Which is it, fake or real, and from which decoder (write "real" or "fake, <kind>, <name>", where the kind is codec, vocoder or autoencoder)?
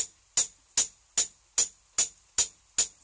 real